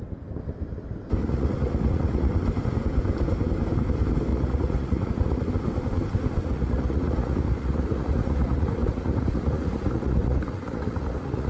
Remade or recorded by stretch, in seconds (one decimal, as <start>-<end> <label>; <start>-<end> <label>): 0.0-1.2 recorded; 1.2-2.3 remade; 2.3-4.3 recorded; 4.3-5.5 remade; 5.5-6.4 recorded; 6.4-11.5 remade